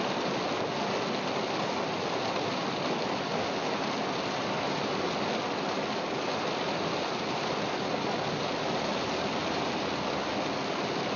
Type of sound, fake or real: real